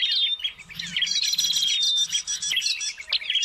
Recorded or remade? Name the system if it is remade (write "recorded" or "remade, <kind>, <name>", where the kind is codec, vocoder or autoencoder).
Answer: recorded